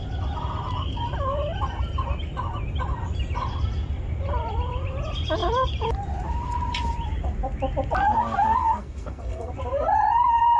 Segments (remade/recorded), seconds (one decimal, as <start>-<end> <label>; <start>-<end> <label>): 0.0-8.6 recorded; 8.6-9.5 remade; 9.5-10.6 recorded